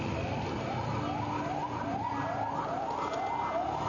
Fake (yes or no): no